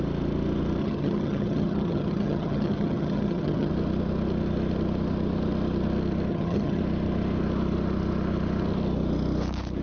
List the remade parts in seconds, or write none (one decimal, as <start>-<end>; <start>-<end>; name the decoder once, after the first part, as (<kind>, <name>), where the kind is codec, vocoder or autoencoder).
0.8-3.7 (vocoder, HiFi-GAN); 6.3-6.8